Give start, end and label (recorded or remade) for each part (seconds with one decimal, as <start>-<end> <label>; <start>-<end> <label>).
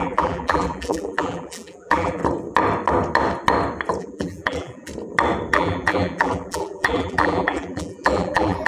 0.0-2.2 remade; 2.2-4.0 recorded; 4.0-4.9 remade; 4.9-5.5 recorded; 5.5-8.7 remade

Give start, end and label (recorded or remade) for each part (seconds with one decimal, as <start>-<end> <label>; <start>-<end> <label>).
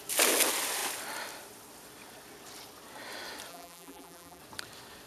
0.0-3.5 recorded; 3.5-4.4 remade; 4.4-5.1 recorded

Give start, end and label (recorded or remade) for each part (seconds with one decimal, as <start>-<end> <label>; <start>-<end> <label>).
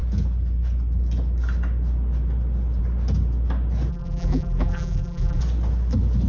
0.0-3.9 recorded; 3.9-5.4 remade; 5.4-6.3 recorded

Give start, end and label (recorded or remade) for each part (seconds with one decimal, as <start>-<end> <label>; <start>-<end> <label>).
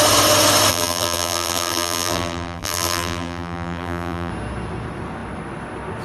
0.0-0.7 recorded; 0.7-4.3 remade; 4.3-6.0 recorded